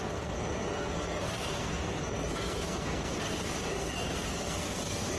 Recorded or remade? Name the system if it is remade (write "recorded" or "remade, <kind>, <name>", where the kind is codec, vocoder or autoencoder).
remade, codec, SNAC